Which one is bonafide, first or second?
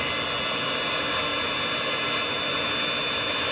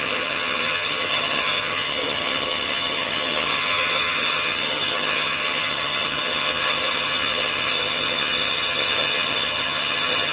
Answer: first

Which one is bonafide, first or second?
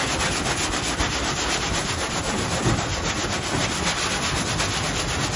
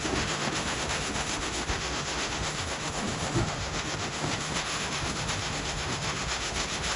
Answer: first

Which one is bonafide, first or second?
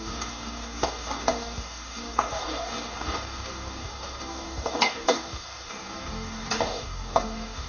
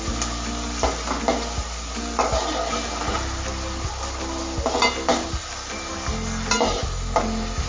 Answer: second